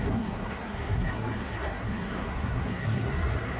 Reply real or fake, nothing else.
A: fake